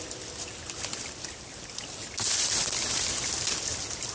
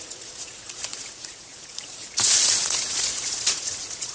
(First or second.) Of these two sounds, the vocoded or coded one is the second